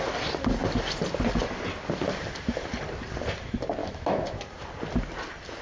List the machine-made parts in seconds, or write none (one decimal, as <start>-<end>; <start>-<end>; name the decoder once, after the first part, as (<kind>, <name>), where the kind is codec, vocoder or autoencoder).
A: 3.8-4.4 (autoencoder, DAC-VAE)